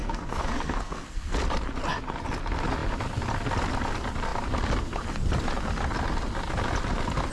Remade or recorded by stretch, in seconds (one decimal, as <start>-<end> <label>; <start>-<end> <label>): 0.0-1.4 remade; 1.4-7.3 recorded